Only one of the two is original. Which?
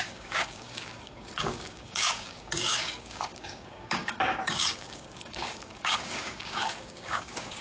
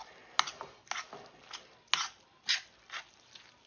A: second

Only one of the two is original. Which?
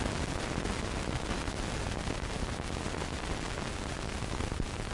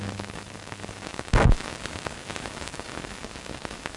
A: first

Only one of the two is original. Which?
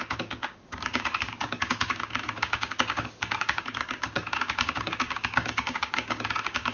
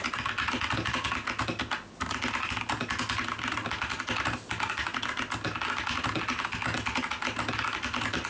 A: second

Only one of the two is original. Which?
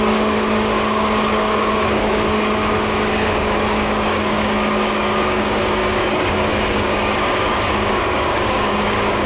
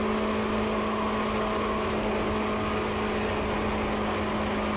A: second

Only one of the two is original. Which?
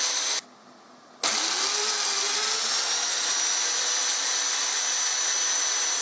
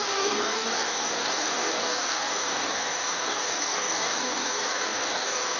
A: first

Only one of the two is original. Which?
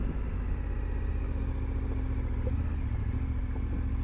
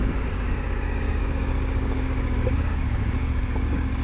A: first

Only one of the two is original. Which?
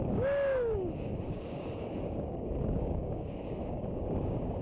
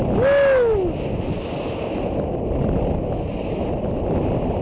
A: second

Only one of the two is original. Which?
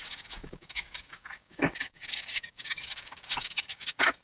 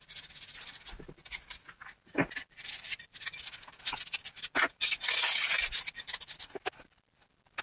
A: second